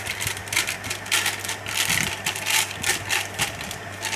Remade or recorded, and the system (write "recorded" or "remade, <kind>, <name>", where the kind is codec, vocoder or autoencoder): recorded